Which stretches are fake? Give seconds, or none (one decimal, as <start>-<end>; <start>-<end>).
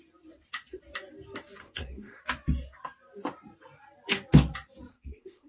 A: 1.6-2.2; 4.9-5.5